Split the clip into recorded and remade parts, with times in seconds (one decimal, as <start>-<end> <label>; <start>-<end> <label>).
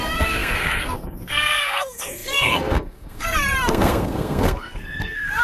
0.0-5.4 remade